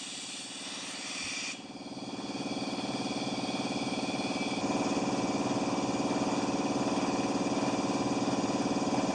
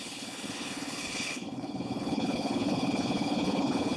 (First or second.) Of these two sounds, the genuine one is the first